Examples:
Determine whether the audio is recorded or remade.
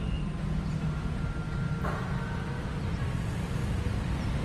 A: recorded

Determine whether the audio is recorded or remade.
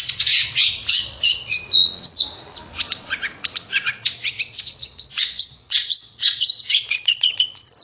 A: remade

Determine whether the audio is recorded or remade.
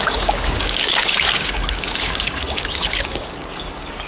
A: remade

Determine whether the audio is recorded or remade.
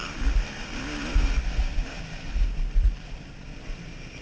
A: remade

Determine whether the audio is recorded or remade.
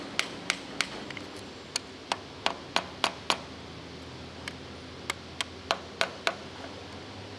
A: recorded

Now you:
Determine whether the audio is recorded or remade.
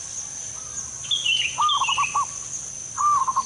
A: recorded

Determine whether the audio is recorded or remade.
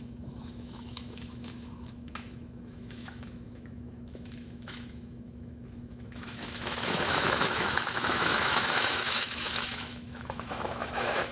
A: remade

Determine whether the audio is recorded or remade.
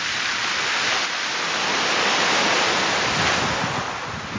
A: recorded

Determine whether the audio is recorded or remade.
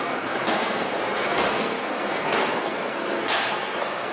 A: remade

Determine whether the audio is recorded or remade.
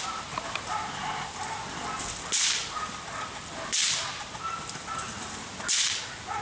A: recorded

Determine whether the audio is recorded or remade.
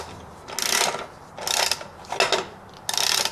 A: recorded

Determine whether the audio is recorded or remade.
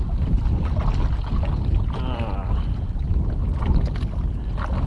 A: recorded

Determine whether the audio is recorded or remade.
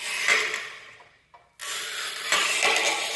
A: recorded